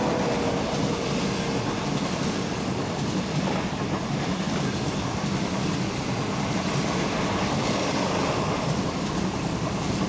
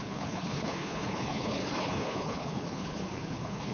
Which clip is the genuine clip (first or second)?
first